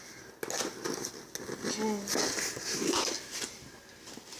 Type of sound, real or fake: real